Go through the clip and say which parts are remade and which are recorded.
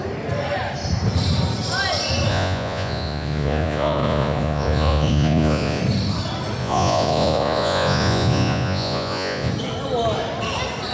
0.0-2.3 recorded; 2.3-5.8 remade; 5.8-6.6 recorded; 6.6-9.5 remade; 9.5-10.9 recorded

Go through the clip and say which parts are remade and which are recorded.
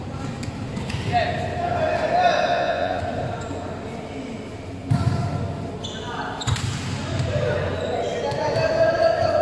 0.0-2.5 recorded; 2.5-3.0 remade; 3.0-9.4 recorded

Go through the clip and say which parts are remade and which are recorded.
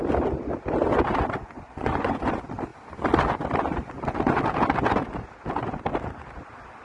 0.0-1.4 recorded; 1.4-2.2 remade; 2.2-6.8 recorded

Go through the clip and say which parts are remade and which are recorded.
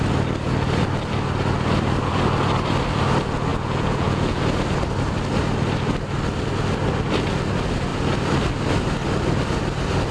0.0-3.5 recorded; 3.5-4.4 remade; 4.4-10.1 recorded